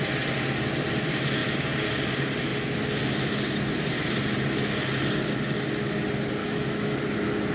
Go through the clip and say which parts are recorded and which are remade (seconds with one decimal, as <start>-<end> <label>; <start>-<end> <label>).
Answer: 0.0-6.4 recorded; 6.4-7.0 remade; 7.0-7.5 recorded